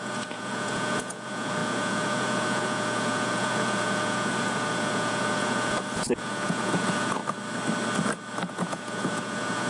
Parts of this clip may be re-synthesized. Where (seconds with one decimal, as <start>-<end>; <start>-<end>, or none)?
0.0-7.2; 8.5-9.7